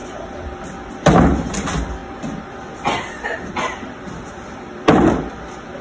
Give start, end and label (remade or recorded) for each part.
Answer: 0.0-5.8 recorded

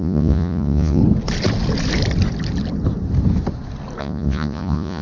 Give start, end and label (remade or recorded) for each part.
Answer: 0.0-1.0 remade; 1.0-4.0 recorded; 4.0-5.0 remade

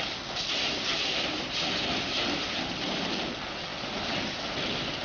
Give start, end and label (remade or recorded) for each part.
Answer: 0.0-5.0 recorded

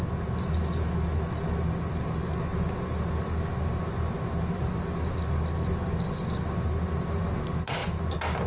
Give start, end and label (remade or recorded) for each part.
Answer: 0.0-8.5 recorded

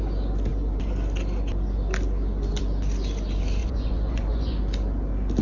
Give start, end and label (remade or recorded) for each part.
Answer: 0.0-3.6 recorded; 3.6-4.6 remade; 4.6-5.4 recorded

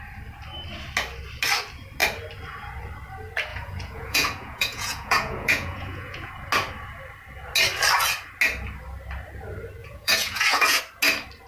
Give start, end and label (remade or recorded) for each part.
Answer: 0.0-3.5 recorded; 3.5-6.3 remade; 6.3-9.8 recorded; 9.8-10.8 remade; 10.8-11.5 recorded